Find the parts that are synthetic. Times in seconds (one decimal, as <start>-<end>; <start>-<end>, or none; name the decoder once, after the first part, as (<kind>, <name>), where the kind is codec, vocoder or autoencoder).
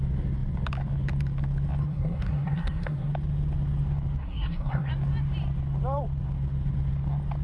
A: 1.8-3.1 (codec, SNAC); 4.2-4.9